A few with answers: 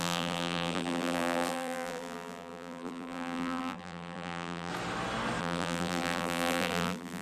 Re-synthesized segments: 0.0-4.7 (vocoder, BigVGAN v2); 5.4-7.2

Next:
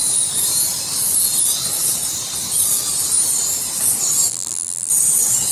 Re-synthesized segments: 4.3-4.9 (vocoder, BigVGAN v2)

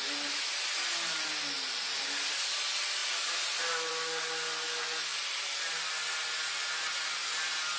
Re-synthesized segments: 5.1-5.7 (vocoder, BigVGAN v2)